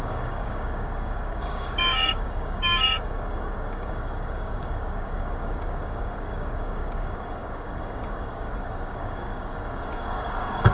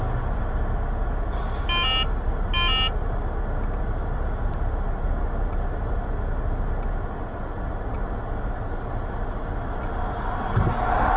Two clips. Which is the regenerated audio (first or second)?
first